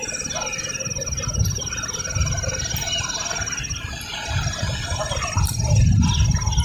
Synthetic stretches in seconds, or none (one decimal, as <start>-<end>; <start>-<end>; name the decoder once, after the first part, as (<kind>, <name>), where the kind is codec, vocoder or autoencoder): none